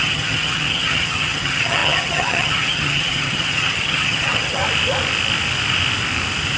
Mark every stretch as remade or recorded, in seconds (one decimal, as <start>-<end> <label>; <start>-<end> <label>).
0.0-4.6 remade; 4.6-6.6 recorded